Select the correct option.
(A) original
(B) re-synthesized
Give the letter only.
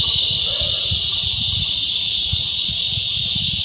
A